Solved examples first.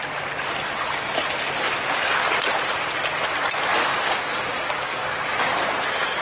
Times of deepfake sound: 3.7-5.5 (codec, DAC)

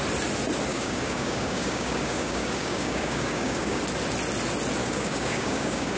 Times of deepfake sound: 0.7-3.8 (codec, DAC); 4.8-6.0

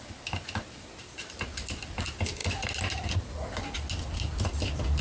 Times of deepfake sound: none

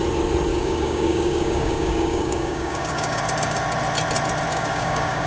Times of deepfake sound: 0.5-3.2 (codec, DAC); 4.5-5.3

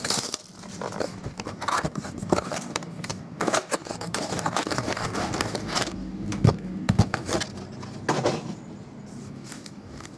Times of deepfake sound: 0.0-0.4 (codec, DAC); 1.0-7.3; 9.2-10.2

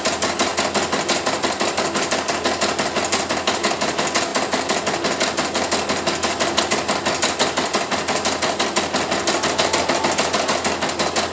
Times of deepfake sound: none